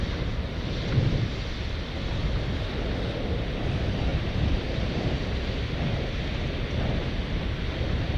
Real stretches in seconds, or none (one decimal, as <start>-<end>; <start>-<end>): 0.0-2.2; 2.9-4.1; 5.3-8.2